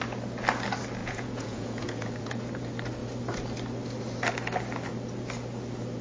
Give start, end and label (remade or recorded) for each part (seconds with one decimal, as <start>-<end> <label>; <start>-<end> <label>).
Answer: 0.0-1.0 recorded; 1.0-2.4 remade; 2.4-6.0 recorded